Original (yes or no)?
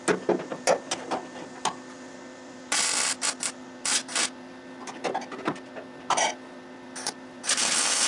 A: yes